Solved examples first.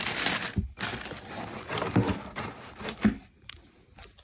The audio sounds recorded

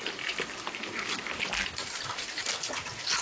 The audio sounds recorded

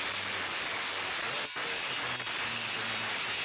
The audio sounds recorded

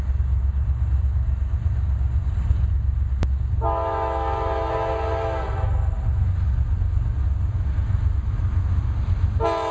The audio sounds recorded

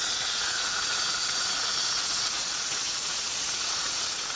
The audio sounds remade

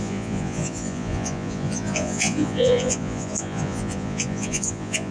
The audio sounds remade